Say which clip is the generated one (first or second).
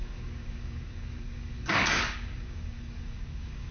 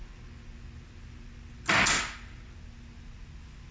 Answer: first